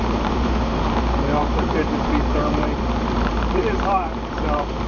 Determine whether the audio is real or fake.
fake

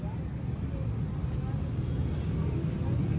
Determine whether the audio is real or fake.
real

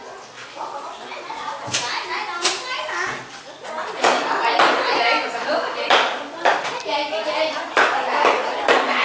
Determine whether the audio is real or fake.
real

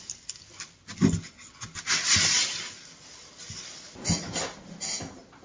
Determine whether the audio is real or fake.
real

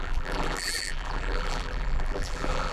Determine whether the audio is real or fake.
fake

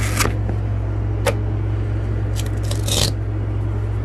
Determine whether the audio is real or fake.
real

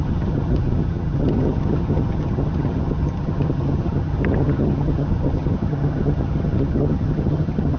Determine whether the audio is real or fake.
fake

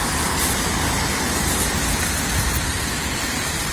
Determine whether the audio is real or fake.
real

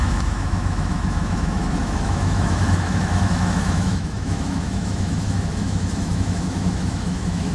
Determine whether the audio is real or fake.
fake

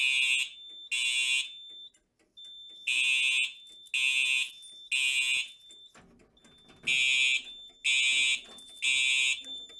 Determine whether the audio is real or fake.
real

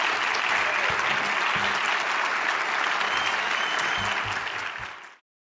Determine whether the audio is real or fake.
real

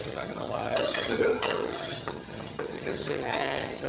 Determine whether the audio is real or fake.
fake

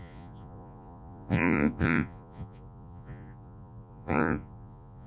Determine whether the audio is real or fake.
fake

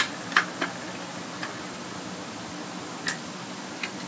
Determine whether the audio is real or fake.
real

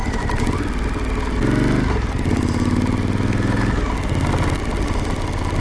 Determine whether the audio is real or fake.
real